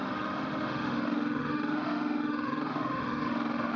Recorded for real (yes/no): no